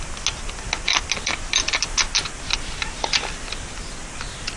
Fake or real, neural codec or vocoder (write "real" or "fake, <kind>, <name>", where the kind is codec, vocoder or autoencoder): real